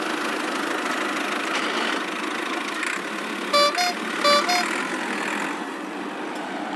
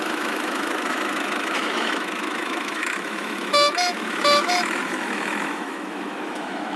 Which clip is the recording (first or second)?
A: first